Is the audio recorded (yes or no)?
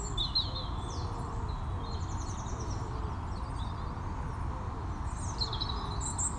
yes